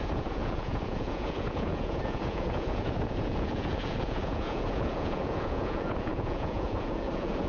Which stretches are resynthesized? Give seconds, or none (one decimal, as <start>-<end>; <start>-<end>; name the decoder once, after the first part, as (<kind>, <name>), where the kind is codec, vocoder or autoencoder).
0.0-7.5 (vocoder, Vocos)